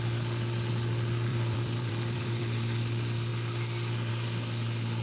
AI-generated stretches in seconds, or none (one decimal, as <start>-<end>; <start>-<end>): 1.3-2.4